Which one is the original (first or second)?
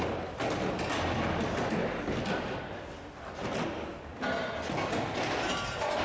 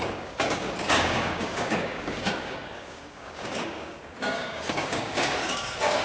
first